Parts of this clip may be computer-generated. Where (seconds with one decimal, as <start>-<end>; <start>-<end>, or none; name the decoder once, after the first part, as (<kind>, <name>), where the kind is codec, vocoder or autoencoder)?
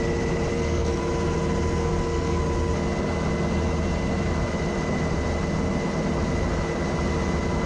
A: 0.5-1.0 (codec, SNAC); 1.8-2.4